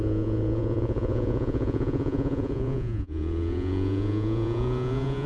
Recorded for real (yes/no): no